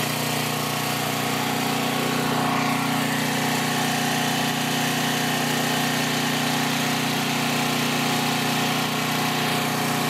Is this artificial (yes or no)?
no